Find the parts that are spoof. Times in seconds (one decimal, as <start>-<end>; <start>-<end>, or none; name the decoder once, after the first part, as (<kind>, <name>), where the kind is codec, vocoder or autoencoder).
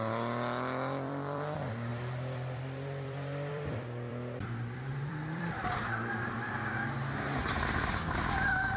0.0-5.6 (vocoder, BigVGAN v2)